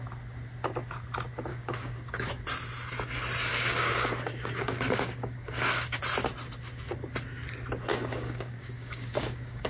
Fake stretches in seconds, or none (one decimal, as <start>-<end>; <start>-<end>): 1.5-2.3; 3.5-6.0; 7.9-9.7